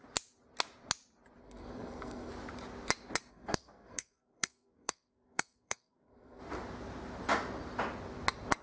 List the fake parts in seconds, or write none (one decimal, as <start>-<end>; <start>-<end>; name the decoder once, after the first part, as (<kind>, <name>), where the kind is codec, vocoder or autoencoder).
1.4-2.3 (codec, SNAC); 3.3-6.4